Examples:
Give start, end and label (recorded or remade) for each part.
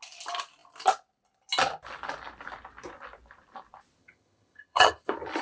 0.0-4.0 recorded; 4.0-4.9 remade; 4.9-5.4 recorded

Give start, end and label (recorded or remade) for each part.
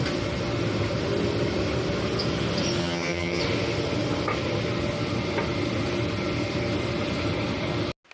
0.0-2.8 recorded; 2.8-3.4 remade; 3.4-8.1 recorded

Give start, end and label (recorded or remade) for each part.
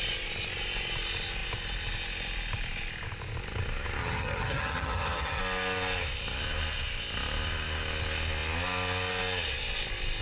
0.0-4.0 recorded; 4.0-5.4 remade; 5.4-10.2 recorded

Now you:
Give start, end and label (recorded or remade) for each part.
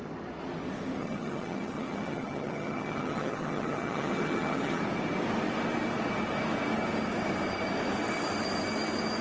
0.0-1.0 recorded; 1.0-4.8 remade; 4.8-9.2 recorded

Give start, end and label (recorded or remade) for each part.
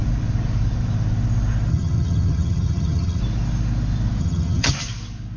0.0-1.7 recorded; 1.7-3.2 remade; 3.2-4.2 recorded; 4.2-4.7 remade; 4.7-5.4 recorded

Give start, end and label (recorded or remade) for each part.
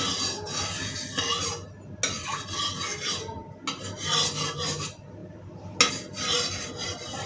0.0-7.3 recorded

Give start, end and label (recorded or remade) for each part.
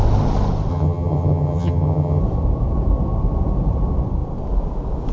0.0-0.7 recorded; 0.7-2.2 remade; 2.2-5.1 recorded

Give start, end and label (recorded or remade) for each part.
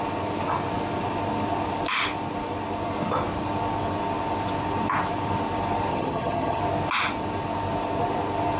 0.0-5.9 recorded; 5.9-6.6 remade; 6.6-8.6 recorded